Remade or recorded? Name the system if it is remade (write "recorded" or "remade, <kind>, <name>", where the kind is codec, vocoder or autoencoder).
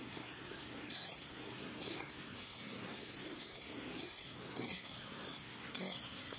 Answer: remade, codec, SNAC